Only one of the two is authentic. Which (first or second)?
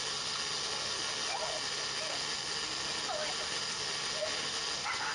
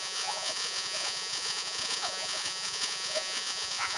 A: first